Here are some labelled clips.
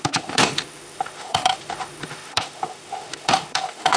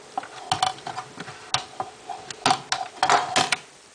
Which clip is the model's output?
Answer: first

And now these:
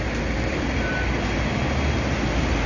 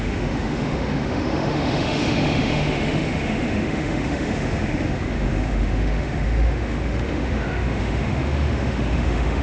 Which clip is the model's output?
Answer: second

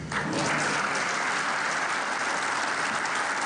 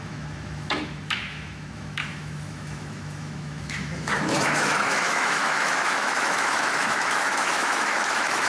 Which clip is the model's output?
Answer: second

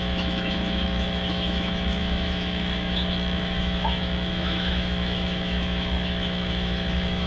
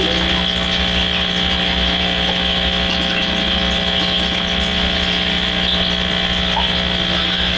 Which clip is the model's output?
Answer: first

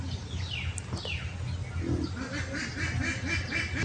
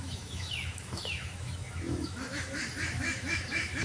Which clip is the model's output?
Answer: second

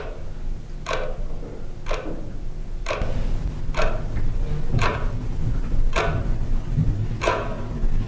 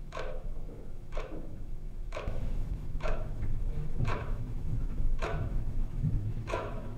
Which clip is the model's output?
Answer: second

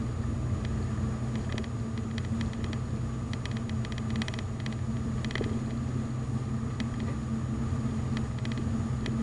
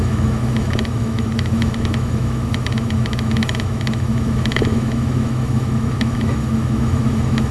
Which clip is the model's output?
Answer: second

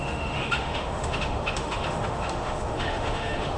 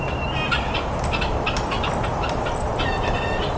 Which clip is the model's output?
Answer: first